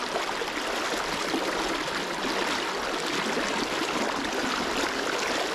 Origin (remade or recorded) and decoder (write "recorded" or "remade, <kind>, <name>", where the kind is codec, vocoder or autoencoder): recorded